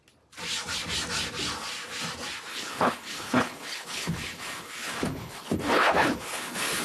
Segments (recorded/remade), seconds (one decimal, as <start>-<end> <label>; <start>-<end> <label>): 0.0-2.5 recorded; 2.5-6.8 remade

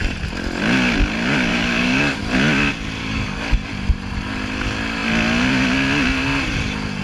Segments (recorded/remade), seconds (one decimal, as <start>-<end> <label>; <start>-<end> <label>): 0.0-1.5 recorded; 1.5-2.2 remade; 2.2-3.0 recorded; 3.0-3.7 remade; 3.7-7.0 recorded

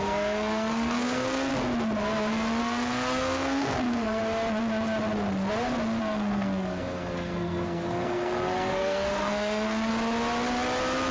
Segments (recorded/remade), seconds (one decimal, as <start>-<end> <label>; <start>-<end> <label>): 0.0-1.5 remade; 1.5-2.6 recorded; 2.6-4.2 remade; 4.2-6.0 recorded; 6.0-9.9 remade; 9.9-11.1 recorded